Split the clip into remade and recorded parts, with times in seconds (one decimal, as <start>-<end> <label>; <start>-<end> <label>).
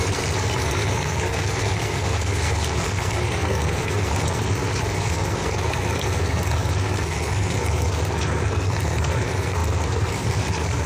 0.0-10.9 remade